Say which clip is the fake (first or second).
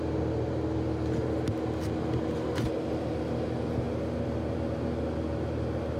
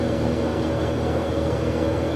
second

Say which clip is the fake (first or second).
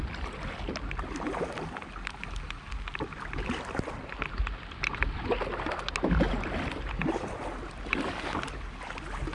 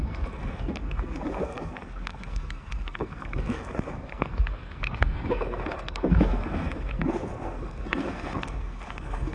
second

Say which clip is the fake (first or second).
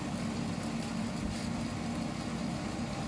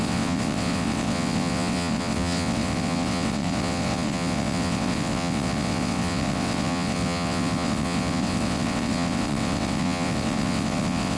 second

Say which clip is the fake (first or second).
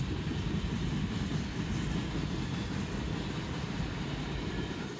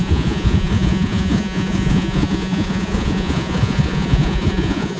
second